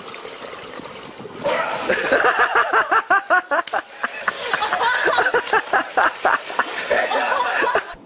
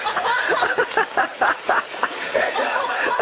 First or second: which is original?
first